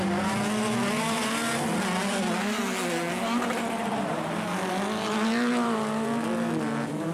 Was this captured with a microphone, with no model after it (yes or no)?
yes